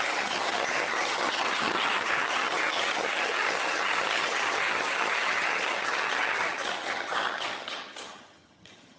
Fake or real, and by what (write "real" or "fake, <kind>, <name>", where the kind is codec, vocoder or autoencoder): fake, vocoder, HiFi-GAN